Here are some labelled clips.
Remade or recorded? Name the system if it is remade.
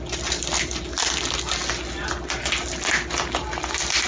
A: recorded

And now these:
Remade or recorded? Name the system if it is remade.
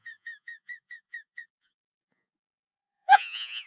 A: remade, vocoder, Vocos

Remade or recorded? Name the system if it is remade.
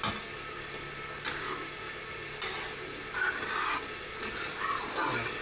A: recorded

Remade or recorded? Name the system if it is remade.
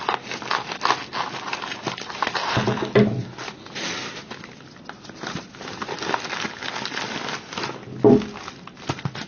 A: recorded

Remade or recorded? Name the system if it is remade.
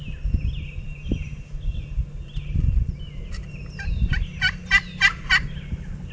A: recorded